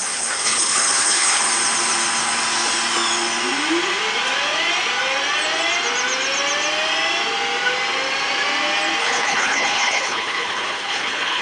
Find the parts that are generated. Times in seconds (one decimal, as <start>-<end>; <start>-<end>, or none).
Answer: 0.0-1.4; 9.0-11.4